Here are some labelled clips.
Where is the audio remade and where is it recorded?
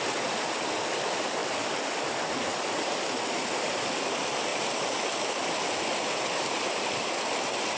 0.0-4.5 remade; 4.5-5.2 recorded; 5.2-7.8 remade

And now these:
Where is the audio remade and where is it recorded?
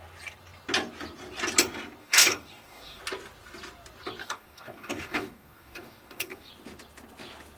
0.0-2.0 recorded; 2.0-3.0 remade; 3.0-4.2 recorded; 4.2-6.5 remade; 6.5-7.6 recorded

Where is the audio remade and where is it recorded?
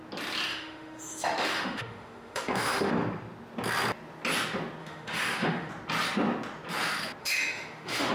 0.0-0.5 recorded; 0.5-2.9 remade; 2.9-4.8 recorded; 4.8-5.7 remade; 5.7-7.2 recorded; 7.2-8.1 remade